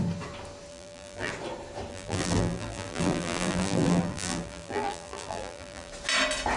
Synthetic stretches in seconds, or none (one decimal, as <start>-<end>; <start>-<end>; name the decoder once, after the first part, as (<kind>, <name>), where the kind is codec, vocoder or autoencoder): 0.7-1.3 (vocoder, BigVGAN v2); 1.9-5.9